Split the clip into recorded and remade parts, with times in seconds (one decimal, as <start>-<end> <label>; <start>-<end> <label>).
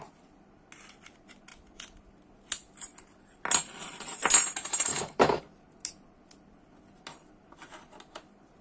0.0-4.9 recorded; 4.9-5.4 remade; 5.4-8.6 recorded